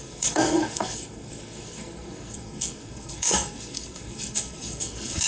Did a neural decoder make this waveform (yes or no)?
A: yes